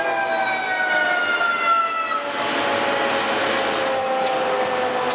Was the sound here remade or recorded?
recorded